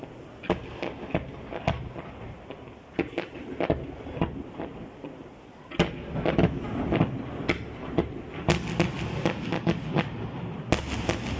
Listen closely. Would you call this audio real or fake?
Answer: real